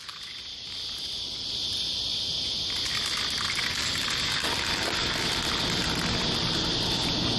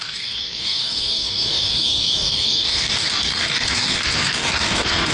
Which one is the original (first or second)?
first